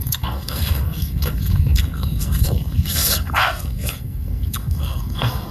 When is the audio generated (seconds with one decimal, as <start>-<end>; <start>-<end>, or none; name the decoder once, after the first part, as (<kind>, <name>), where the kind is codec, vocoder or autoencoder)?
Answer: 0.0-5.5 (codec, SNAC)